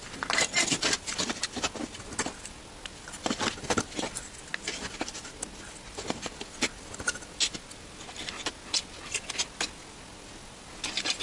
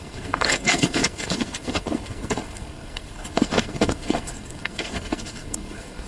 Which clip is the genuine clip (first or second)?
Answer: first